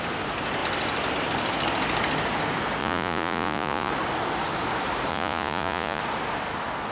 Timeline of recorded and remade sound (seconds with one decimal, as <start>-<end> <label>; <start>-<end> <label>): 0.0-2.8 recorded; 2.8-3.9 remade; 3.9-5.1 recorded; 5.1-6.0 remade; 6.0-6.9 recorded